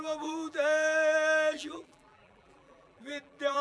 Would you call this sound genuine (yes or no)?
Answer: no